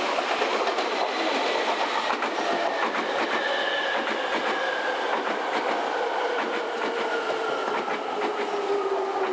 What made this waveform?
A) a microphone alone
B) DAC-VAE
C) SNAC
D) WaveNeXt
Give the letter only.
A